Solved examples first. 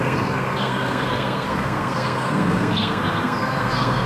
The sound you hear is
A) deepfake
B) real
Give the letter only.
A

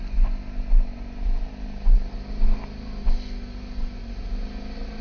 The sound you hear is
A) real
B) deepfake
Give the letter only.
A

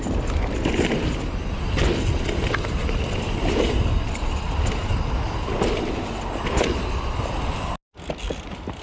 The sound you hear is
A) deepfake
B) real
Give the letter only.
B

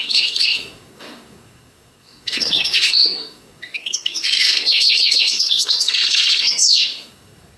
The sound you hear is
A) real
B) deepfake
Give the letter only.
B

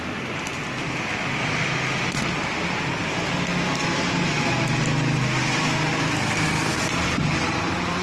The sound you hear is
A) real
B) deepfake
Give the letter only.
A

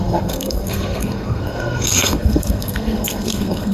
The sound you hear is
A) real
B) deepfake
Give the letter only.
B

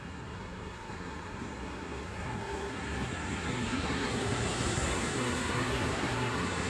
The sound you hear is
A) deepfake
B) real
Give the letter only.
A